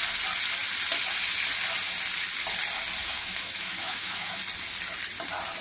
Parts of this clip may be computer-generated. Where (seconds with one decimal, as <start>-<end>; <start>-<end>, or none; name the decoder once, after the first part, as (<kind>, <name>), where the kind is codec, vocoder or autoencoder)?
3.0-4.4 (autoencoder, DAC-VAE)